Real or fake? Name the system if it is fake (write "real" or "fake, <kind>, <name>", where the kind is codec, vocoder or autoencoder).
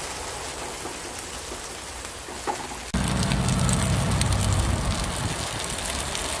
real